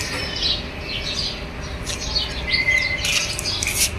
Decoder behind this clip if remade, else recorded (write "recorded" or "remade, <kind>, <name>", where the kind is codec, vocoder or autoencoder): recorded